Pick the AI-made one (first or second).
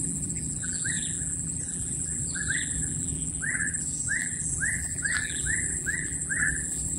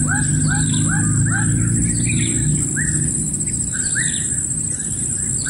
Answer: first